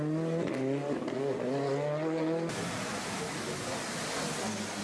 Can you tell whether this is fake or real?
real